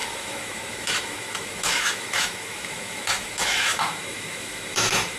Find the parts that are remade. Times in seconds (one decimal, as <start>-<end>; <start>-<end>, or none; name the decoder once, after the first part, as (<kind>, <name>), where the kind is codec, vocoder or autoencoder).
0.0-5.2 (autoencoder, DAC-VAE)